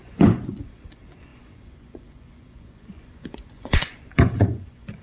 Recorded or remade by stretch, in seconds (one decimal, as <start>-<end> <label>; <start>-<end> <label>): 0.0-5.0 remade